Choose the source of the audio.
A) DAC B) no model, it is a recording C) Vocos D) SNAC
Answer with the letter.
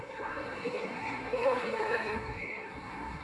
D